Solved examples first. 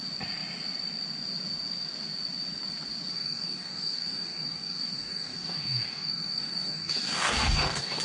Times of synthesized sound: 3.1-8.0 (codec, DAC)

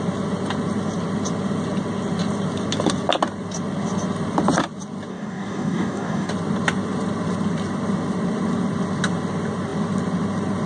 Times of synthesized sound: 5.1-6.3 (codec, DAC)

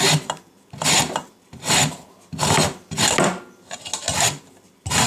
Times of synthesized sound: none

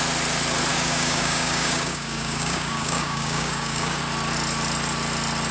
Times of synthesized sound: 0.7-4.0 (codec, DAC)